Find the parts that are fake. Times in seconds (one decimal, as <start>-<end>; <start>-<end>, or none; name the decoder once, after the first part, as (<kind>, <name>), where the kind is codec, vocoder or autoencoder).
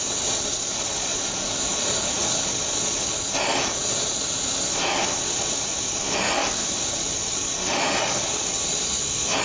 none